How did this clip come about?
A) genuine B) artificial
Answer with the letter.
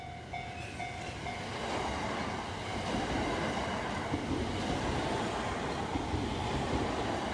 A